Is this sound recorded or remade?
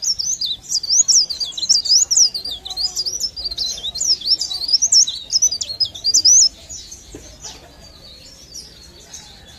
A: recorded